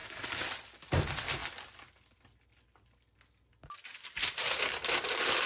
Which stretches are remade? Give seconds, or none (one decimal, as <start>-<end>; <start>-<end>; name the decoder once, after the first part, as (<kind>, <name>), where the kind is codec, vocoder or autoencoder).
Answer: none